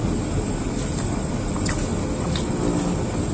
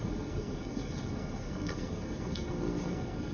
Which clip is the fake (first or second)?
second